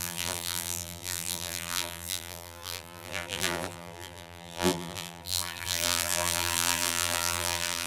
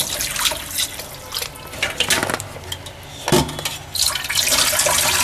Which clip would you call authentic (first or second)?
second